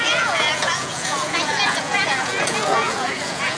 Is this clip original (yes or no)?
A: no